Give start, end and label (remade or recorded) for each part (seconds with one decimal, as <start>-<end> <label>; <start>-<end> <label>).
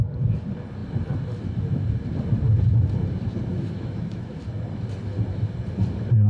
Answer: 0.0-3.5 recorded; 3.5-4.4 remade; 4.4-6.3 recorded